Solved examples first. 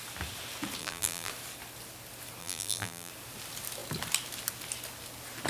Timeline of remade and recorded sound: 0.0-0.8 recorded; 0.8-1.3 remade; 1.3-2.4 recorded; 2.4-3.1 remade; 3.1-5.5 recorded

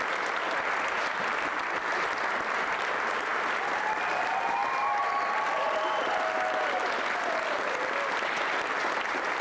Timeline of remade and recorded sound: 0.0-9.4 recorded

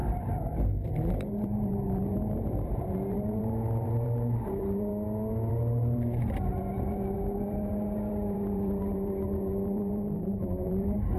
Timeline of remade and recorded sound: 0.0-1.1 recorded; 1.1-4.9 remade; 4.9-5.5 recorded; 5.5-11.2 remade

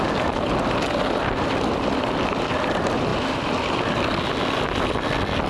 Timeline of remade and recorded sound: 0.0-5.5 recorded